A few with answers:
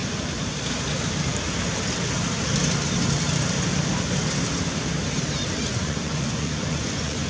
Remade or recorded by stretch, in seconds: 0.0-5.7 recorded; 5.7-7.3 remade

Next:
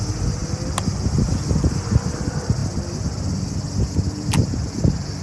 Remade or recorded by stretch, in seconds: 0.0-5.2 recorded

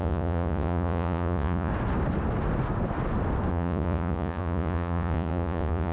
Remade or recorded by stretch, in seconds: 0.0-1.7 remade; 1.7-3.5 recorded; 3.5-5.9 remade

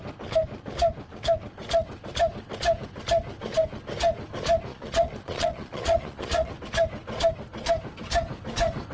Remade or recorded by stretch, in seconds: 0.0-4.7 recorded; 4.7-6.5 remade; 6.5-8.9 recorded

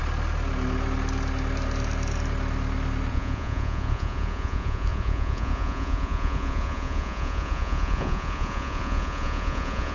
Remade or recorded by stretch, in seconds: 0.0-3.1 recorded; 3.1-9.9 remade